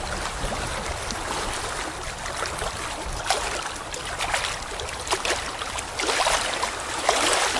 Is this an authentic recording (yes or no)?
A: yes